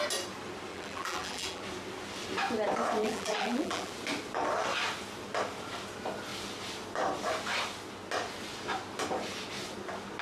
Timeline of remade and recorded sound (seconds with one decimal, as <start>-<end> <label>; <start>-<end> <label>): 0.0-0.7 recorded; 0.7-1.6 remade; 1.6-3.0 recorded; 3.0-3.9 remade; 3.9-10.2 recorded